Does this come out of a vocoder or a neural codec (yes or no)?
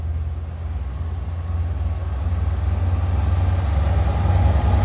no